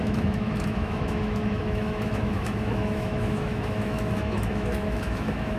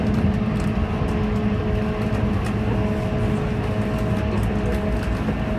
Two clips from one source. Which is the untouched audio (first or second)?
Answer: second